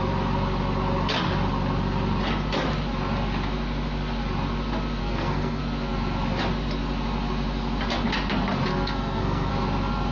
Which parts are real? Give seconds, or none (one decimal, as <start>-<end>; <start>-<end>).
0.0-5.0; 5.6-8.7; 9.5-10.1